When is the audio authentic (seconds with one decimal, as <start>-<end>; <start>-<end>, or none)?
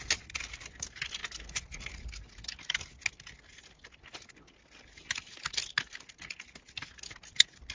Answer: 0.0-7.7